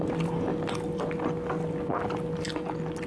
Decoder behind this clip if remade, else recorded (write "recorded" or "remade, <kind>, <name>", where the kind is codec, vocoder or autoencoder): recorded